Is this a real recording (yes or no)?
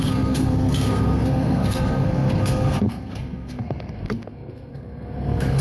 no